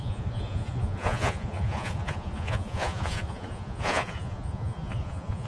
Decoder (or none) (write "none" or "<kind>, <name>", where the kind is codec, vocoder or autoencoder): vocoder, Vocos